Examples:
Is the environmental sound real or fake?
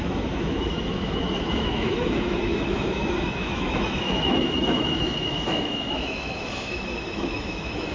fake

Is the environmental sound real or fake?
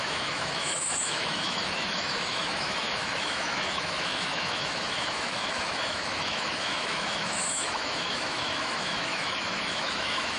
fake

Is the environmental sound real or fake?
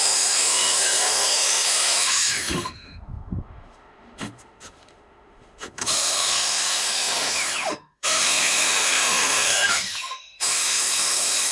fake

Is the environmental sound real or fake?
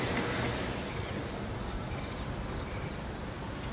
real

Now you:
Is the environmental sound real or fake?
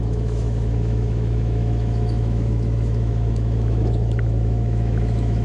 fake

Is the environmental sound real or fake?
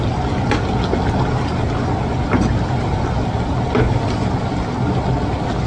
real